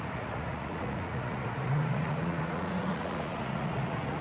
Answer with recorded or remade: remade